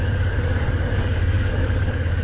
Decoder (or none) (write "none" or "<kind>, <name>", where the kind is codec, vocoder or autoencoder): codec, DAC